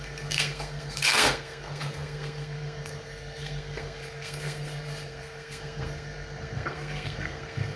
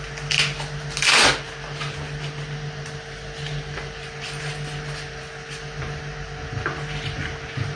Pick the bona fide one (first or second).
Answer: second